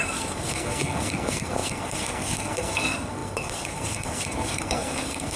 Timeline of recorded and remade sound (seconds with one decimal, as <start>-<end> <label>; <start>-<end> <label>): 0.0-5.4 remade